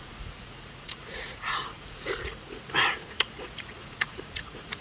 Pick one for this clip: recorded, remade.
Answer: remade